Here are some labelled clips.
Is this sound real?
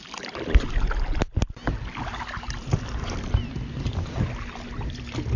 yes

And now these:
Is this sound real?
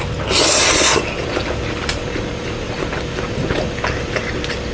yes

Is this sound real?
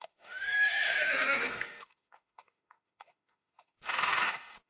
no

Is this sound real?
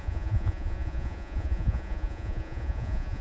no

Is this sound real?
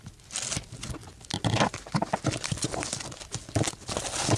yes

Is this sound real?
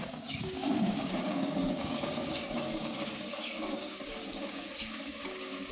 no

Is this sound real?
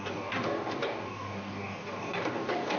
no